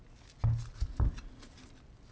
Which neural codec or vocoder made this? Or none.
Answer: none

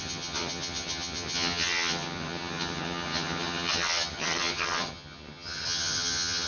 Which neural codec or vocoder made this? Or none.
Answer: vocoder, HiFi-GAN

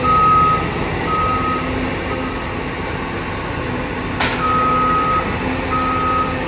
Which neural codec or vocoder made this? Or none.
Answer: none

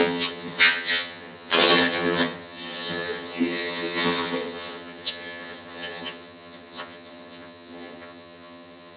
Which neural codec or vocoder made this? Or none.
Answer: vocoder, HiFi-GAN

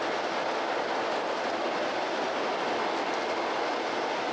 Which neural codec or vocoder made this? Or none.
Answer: none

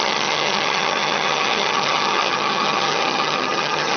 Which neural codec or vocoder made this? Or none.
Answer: vocoder, HiFi-GAN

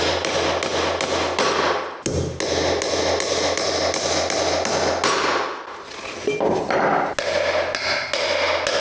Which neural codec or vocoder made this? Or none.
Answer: none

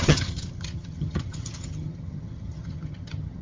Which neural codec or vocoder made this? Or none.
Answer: vocoder, HiFi-GAN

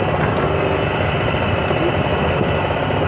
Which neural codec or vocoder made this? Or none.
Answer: none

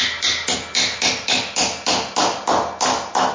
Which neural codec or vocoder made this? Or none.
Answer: none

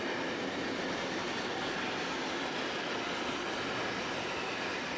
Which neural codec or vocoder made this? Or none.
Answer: none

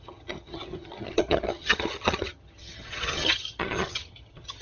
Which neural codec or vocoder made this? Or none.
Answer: vocoder, HiFi-GAN